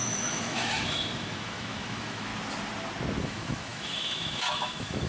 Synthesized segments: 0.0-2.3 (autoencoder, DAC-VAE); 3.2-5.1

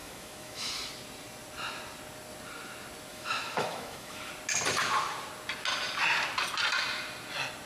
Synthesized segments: 0.0-0.7 (autoencoder, DAC-VAE); 3.1-4.3

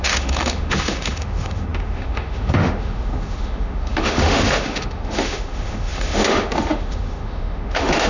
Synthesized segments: 0.0-8.1 (autoencoder, DAC-VAE)

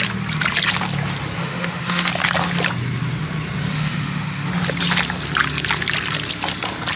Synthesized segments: 1.4-2.1 (autoencoder, DAC-VAE); 3.7-4.5

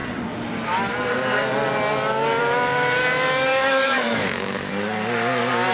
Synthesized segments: 3.5-4.7 (autoencoder, DAC-VAE)

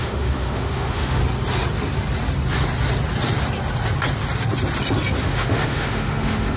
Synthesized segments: 0.0-1.2 (autoencoder, DAC-VAE); 5.2-6.6

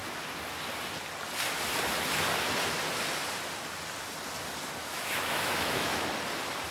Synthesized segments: 4.8-6.1 (autoencoder, DAC-VAE)